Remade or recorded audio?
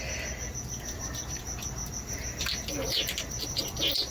recorded